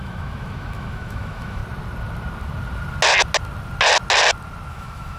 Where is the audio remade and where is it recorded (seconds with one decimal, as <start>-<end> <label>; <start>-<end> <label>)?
0.0-1.6 remade; 1.6-4.7 recorded; 4.7-5.2 remade